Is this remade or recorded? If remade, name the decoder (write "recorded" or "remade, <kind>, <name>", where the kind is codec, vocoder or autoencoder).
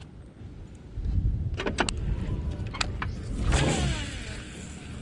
recorded